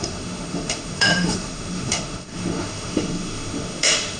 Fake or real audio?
fake